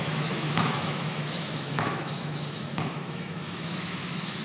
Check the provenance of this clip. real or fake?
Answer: fake